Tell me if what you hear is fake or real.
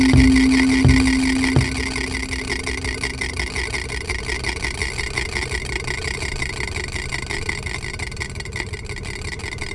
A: real